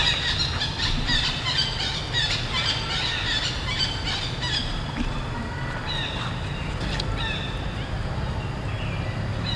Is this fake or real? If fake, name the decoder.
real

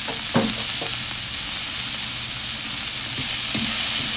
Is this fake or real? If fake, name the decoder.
real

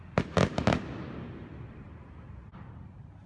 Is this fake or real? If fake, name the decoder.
real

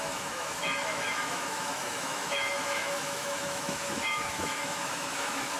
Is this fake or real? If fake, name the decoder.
fake, autoencoder, DAC-VAE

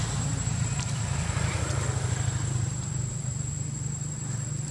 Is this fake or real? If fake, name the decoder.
fake, vocoder, BigVGAN v2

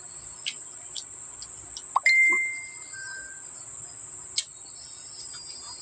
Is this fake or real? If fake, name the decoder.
real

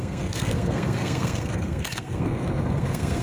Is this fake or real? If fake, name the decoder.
fake, codec, SNAC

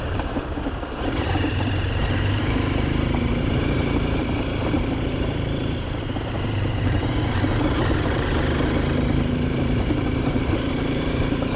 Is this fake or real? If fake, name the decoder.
fake, vocoder, BigVGAN v2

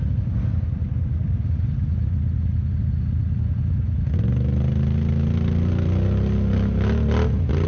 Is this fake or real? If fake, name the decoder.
real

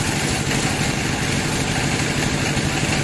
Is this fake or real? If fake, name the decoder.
real